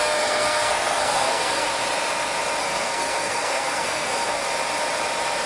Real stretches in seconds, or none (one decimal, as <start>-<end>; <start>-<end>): 1.7-2.6; 4.4-5.5